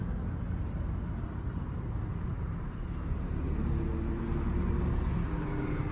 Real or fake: real